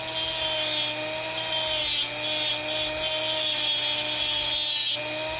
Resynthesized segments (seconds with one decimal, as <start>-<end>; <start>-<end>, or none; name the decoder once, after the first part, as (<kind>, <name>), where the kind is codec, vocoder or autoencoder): none